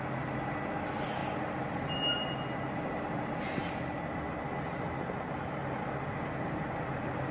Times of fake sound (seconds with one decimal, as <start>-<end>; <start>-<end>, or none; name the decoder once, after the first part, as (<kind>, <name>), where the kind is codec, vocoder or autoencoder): none